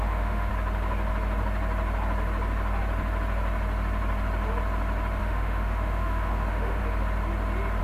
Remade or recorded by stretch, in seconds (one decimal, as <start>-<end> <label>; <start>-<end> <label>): 0.0-0.5 remade; 0.5-5.2 recorded; 5.2-6.8 remade; 6.8-7.8 recorded